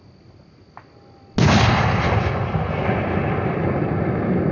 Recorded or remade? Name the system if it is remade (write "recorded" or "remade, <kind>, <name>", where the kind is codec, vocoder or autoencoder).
recorded